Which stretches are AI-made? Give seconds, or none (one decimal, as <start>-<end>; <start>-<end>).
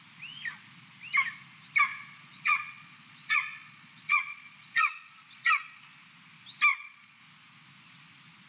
1.9-5.8; 6.7-7.2